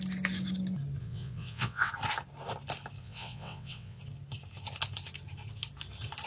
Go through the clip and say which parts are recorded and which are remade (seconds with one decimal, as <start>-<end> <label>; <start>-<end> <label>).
0.0-1.0 recorded; 1.0-1.9 remade; 1.9-3.0 recorded; 3.0-4.0 remade; 4.0-6.3 recorded